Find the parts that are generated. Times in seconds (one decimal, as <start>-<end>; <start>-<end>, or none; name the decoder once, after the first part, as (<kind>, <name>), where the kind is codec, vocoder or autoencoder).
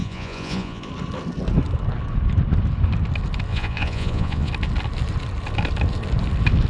0.0-0.9 (vocoder, Vocos); 3.5-4.5